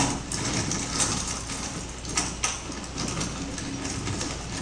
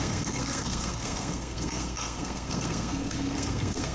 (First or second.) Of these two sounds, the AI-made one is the second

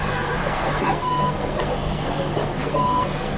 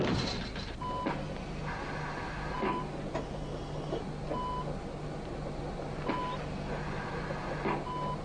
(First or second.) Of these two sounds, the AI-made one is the first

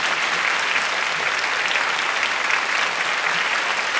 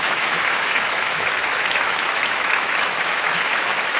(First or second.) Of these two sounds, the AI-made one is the second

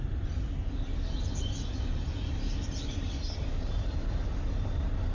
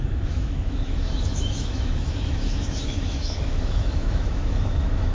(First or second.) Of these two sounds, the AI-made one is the second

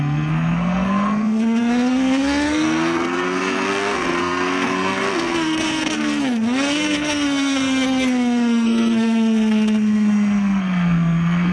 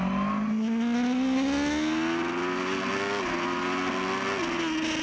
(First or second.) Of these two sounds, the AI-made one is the first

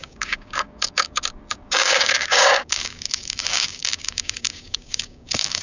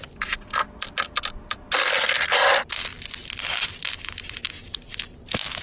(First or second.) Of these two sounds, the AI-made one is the first